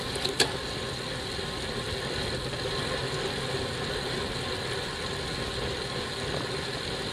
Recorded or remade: recorded